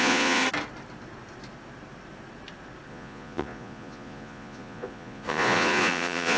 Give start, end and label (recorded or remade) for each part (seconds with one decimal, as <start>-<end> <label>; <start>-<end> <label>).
0.0-0.4 remade; 0.4-2.9 recorded; 2.9-6.4 remade